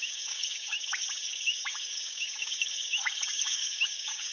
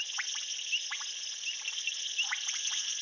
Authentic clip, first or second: second